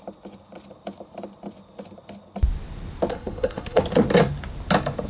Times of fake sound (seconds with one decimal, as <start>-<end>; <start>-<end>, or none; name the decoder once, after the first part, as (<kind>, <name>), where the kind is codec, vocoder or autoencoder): 3.1-3.8 (codec, SNAC)

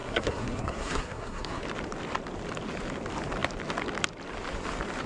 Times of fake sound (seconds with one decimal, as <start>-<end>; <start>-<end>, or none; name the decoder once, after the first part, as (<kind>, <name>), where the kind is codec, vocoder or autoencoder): 0.0-1.6 (codec, SNAC)

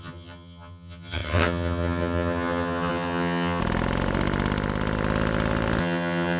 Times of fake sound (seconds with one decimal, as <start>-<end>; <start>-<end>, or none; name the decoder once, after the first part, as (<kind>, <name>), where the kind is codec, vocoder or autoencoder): 0.0-3.6 (vocoder, HiFi-GAN); 5.8-6.4